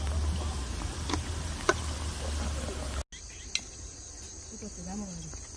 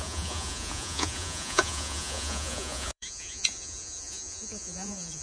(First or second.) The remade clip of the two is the second